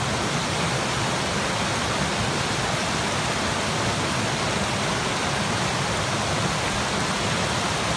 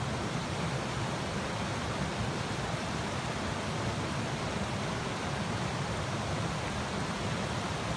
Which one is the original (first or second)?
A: first